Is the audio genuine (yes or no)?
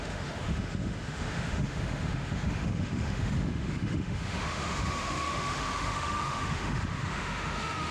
no